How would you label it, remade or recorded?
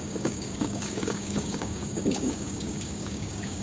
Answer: remade